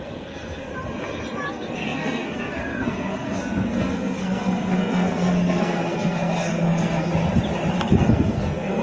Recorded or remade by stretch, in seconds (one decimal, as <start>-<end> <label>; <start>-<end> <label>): 0.0-0.7 remade; 0.7-1.5 recorded; 1.5-7.1 remade; 7.1-7.7 recorded; 7.7-8.8 remade